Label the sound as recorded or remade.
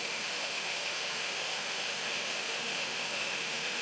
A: remade